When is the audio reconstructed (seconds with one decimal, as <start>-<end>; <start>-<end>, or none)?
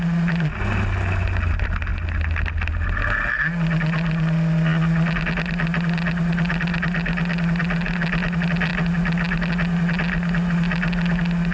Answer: none